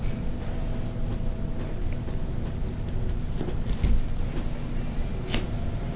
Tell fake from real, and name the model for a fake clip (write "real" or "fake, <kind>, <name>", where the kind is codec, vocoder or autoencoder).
real